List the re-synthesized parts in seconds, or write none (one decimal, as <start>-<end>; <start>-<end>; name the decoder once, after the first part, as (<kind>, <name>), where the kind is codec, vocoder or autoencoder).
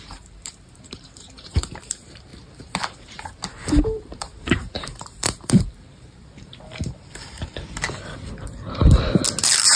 0.0-2.3 (vocoder, BigVGAN v2); 3.8-6.5; 9.4-9.8